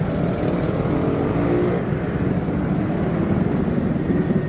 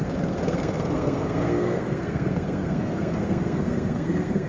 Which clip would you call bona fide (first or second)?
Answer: first